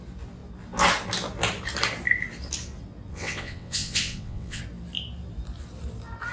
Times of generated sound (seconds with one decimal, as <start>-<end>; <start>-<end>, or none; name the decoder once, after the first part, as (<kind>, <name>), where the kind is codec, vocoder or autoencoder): 3.1-4.6 (vocoder, WaveNeXt)